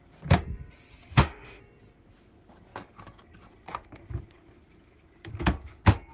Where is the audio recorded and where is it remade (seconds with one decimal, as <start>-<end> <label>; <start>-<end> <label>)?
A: 0.0-1.1 recorded; 1.1-1.6 remade; 1.6-6.1 recorded